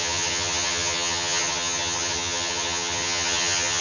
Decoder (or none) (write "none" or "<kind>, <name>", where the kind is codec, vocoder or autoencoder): vocoder, HiFi-GAN